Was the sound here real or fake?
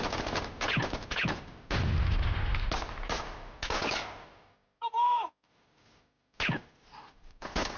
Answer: real